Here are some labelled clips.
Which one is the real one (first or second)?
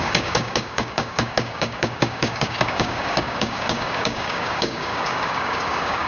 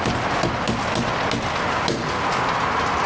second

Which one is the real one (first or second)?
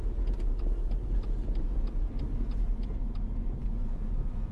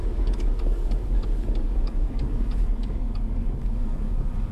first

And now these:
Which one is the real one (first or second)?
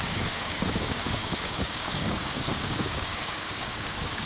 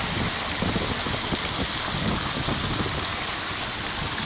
second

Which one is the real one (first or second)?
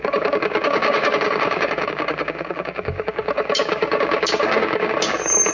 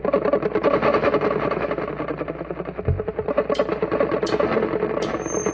second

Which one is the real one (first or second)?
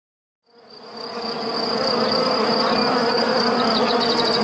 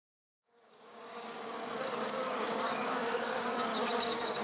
first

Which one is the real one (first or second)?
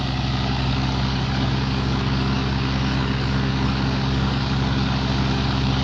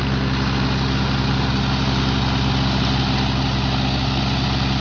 second